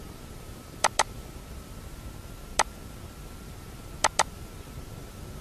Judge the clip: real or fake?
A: real